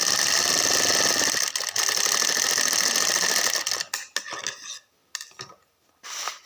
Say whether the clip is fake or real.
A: real